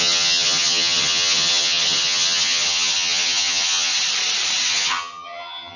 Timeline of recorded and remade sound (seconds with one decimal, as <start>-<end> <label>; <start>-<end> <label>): 0.0-3.9 remade; 3.9-4.7 recorded; 4.7-5.8 remade